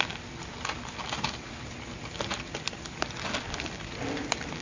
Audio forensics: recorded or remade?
recorded